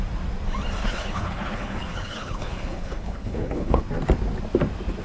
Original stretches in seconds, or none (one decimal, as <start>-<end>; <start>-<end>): 0.0-0.8; 3.8-5.0